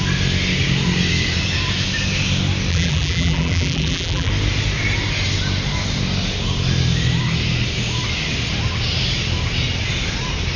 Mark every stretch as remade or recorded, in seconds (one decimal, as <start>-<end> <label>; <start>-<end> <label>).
0.0-2.7 recorded; 2.7-4.3 remade; 4.3-10.6 recorded